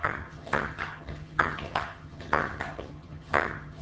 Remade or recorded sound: remade